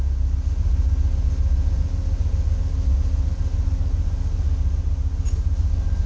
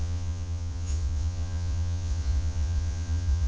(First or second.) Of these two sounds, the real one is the first